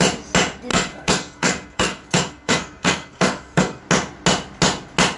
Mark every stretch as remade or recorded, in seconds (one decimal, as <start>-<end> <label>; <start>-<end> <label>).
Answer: 0.0-0.7 recorded; 0.7-3.8 remade; 3.8-5.2 recorded